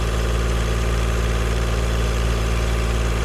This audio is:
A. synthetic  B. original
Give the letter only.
A